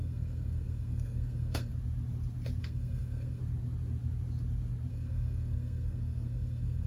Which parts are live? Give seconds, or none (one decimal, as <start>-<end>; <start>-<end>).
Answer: 1.7-2.6; 3.4-4.9